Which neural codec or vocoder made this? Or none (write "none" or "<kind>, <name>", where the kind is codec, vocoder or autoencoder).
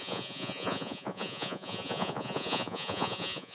vocoder, Vocos